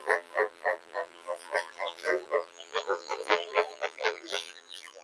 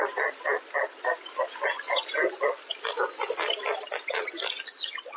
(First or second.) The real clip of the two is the second